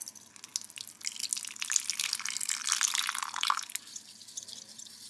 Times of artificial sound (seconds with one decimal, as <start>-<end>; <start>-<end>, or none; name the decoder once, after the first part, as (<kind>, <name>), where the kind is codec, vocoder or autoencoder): none